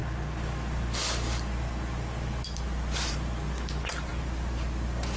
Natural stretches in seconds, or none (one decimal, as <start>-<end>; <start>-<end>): 0.0-5.2